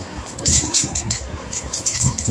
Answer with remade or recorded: remade